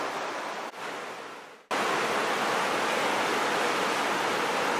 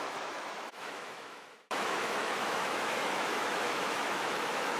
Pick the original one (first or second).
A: first